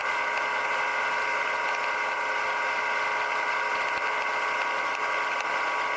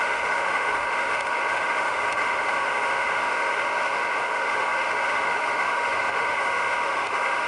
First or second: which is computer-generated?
second